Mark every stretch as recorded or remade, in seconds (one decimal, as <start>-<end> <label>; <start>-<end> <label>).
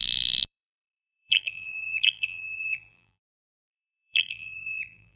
0.0-5.2 remade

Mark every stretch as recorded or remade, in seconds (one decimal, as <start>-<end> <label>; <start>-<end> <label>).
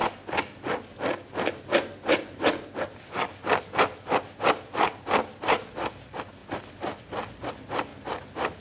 0.0-3.6 recorded; 3.6-7.9 remade; 7.9-8.6 recorded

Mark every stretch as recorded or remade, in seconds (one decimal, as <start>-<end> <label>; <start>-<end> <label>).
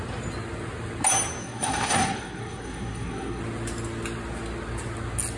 0.0-1.4 recorded; 1.4-3.4 remade; 3.4-5.4 recorded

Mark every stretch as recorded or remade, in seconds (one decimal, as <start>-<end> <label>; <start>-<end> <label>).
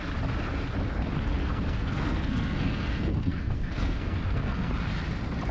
0.0-1.4 recorded; 1.4-4.7 remade; 4.7-5.5 recorded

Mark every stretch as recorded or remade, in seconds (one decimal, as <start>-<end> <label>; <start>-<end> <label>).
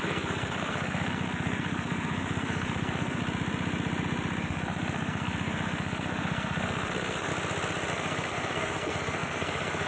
0.0-3.2 remade; 3.2-4.4 recorded; 4.4-7.3 remade; 7.3-7.9 recorded; 7.9-9.9 remade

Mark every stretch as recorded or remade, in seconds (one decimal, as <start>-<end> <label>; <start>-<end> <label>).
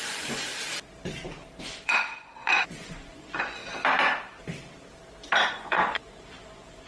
0.0-0.5 remade; 0.5-1.6 recorded; 1.6-3.6 remade; 3.6-5.5 recorded; 5.5-6.9 remade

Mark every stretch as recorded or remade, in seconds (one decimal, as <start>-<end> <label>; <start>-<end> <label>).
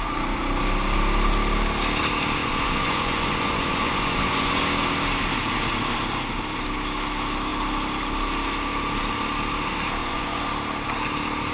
0.0-2.4 recorded; 2.4-4.6 remade; 4.6-10.0 recorded; 10.0-10.5 remade; 10.5-11.5 recorded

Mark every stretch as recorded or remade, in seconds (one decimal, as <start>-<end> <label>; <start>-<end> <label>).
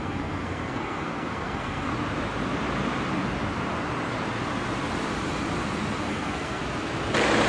0.0-1.9 remade; 1.9-6.1 recorded; 6.1-6.6 remade; 6.6-7.5 recorded